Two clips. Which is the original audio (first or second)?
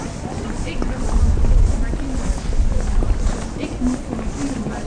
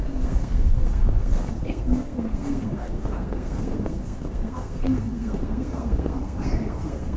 first